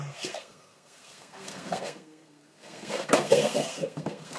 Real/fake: fake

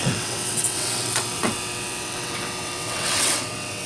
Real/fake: fake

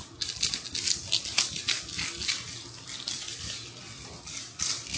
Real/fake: real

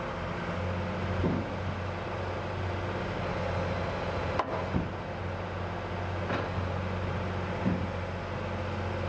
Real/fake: real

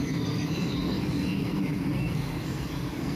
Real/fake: fake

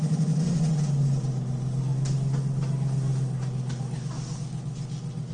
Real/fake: real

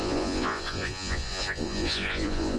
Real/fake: fake